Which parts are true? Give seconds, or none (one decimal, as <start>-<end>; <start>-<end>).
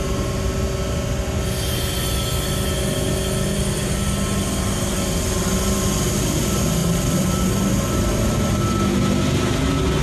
0.0-6.8; 7.7-10.0